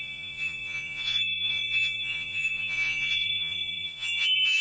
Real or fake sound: fake